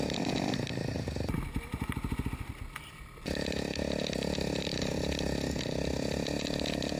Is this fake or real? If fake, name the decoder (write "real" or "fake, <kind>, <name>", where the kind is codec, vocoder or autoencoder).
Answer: real